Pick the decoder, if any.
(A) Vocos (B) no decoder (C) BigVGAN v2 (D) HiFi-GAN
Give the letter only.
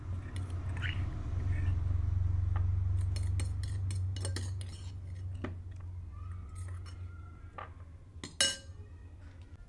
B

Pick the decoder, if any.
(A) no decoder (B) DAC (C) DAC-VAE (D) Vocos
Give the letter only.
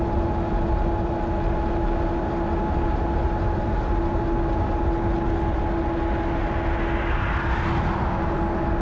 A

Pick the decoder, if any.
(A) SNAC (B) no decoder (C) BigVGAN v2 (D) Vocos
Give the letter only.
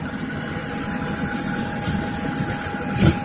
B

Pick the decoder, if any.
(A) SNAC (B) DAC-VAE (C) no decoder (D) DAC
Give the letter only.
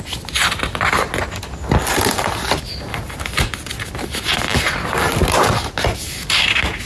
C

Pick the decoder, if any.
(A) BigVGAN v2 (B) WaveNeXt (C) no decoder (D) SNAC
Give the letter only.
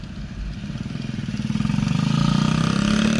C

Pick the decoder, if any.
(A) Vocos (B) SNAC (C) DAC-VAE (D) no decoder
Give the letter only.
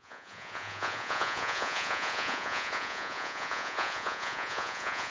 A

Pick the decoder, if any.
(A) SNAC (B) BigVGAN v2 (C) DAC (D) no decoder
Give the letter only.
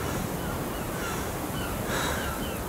D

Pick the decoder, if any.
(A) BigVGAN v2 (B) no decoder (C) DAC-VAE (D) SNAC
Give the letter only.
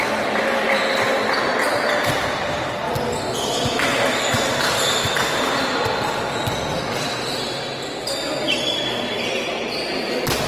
B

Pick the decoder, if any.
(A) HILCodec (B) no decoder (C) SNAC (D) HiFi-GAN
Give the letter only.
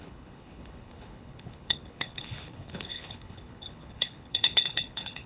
A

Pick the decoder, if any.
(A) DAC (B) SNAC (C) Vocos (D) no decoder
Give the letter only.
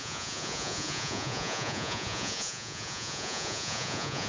C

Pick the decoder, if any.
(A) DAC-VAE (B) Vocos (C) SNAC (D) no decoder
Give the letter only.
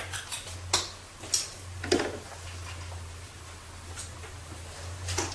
D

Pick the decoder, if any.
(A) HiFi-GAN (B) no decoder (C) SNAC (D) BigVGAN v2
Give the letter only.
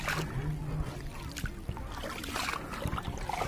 B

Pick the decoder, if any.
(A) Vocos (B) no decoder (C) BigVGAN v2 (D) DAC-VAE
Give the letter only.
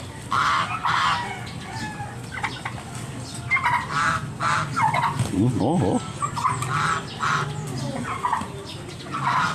B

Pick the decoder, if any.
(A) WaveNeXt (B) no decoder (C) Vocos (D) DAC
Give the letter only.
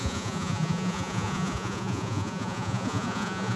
C